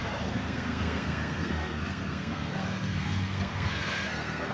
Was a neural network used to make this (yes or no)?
yes